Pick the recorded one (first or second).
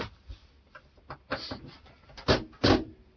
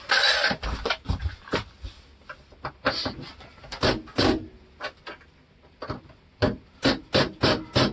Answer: second